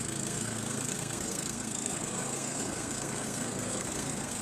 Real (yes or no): no